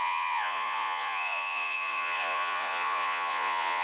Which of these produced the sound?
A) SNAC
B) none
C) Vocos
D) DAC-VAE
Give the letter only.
C